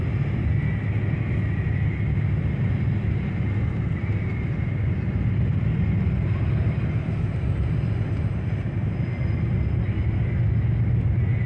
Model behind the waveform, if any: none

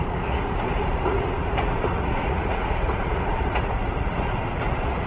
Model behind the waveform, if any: vocoder, Vocos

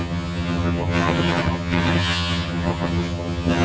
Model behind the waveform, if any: vocoder, HiFi-GAN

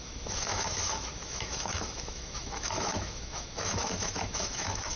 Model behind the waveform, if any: autoencoder, DAC-VAE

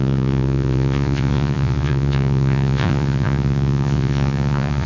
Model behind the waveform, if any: vocoder, Vocos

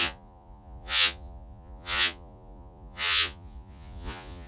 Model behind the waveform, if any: vocoder, Vocos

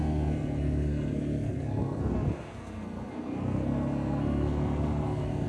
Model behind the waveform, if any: codec, SNAC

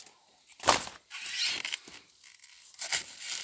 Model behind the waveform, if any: none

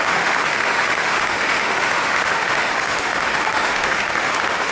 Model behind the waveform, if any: autoencoder, DAC-VAE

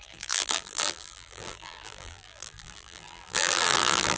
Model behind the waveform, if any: vocoder, BigVGAN v2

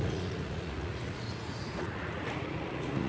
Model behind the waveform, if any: vocoder, Vocos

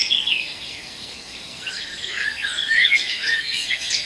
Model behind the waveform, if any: codec, SNAC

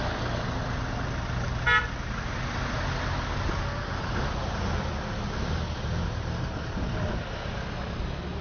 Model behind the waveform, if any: none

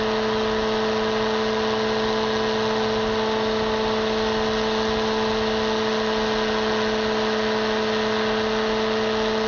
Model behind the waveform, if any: none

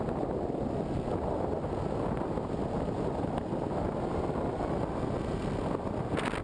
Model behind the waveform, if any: none